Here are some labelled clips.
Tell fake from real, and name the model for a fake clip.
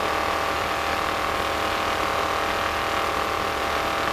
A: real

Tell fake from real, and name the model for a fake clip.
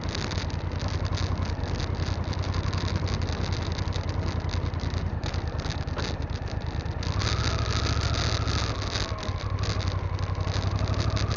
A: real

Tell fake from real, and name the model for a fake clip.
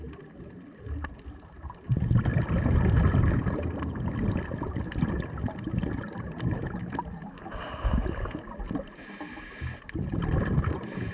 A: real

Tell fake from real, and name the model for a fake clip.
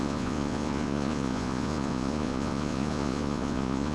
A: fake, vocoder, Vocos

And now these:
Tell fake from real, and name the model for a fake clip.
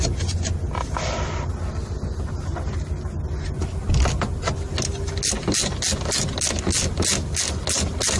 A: real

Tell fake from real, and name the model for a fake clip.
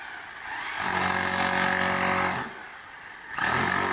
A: real